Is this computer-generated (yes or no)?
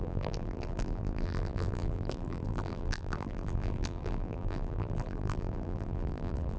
yes